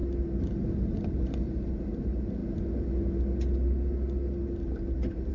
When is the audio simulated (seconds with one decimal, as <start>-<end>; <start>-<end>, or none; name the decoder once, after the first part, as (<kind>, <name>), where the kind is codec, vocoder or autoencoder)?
none